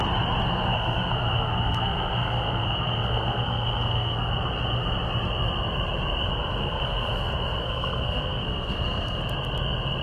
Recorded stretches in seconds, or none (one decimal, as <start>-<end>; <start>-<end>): 0.0-0.5; 4.3-6.6; 7.1-7.6; 9.2-10.0